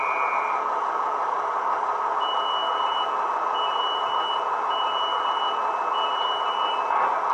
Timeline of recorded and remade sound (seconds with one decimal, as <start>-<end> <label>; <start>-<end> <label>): 0.0-7.3 recorded

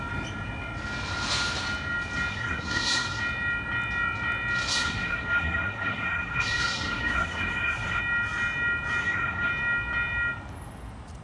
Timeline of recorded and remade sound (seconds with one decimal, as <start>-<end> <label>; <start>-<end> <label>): 0.0-2.3 recorded; 2.3-3.2 remade; 3.2-4.7 recorded; 4.7-8.0 remade; 8.0-9.0 recorded; 9.0-9.5 remade; 9.5-11.2 recorded

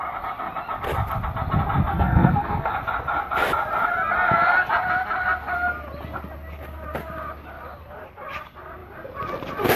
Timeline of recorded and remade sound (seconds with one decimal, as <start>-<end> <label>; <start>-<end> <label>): 0.0-1.9 recorded; 1.9-2.7 remade; 2.7-9.8 recorded

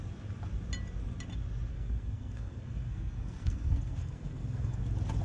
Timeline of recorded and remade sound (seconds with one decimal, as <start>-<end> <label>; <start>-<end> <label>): 0.0-1.7 recorded; 1.7-4.8 remade; 4.8-5.2 recorded

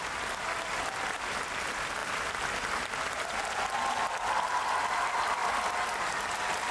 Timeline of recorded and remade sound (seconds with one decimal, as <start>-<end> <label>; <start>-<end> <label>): 0.0-6.7 recorded

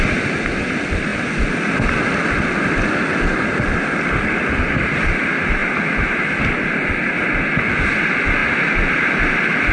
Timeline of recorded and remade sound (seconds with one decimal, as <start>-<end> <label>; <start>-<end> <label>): 0.0-9.7 recorded

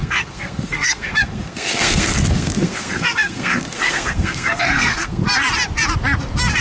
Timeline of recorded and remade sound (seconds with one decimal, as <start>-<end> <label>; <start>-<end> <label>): 0.0-5.2 remade; 5.2-6.6 recorded

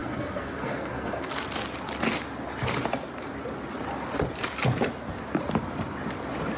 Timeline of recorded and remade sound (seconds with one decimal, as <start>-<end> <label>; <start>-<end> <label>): 0.0-1.3 remade; 1.3-6.6 recorded